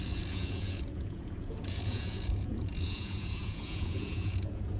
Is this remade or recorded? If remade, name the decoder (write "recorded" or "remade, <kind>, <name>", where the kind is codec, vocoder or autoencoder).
remade, vocoder, Vocos